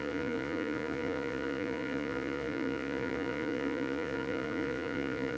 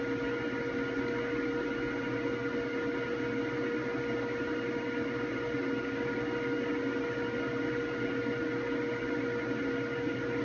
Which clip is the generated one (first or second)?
first